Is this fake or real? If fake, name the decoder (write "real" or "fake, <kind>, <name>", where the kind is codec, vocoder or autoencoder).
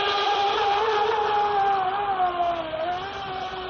real